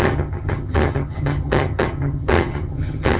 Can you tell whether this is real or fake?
fake